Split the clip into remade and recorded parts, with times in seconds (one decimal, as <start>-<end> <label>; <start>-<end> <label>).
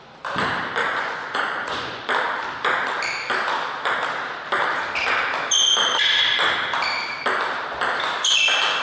0.0-0.8 recorded; 0.8-2.0 remade; 2.0-8.8 recorded